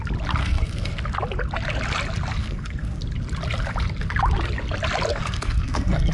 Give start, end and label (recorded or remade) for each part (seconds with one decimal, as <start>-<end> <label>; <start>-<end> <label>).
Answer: 0.0-0.4 recorded; 0.4-1.0 remade; 1.0-2.4 recorded; 2.4-3.0 remade; 3.0-5.1 recorded; 5.1-6.1 remade